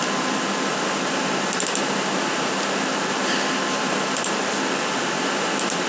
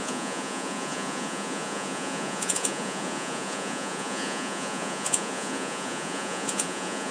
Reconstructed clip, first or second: second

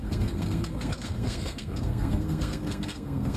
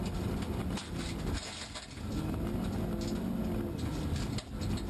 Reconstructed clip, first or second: first